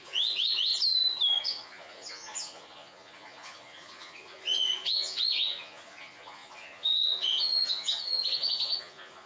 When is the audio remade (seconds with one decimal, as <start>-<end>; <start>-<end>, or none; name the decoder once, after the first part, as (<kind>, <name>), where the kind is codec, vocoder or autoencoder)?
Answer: 0.0-0.7 (vocoder, Vocos); 1.4-9.3